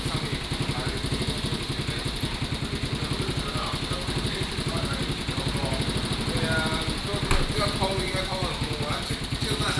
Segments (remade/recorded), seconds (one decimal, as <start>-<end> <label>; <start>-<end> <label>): 0.0-9.8 recorded